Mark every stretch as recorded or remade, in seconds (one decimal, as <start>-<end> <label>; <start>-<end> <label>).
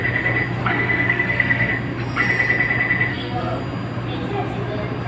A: 0.0-0.6 recorded; 0.6-1.7 remade; 1.7-3.1 recorded; 3.1-3.6 remade; 3.6-5.1 recorded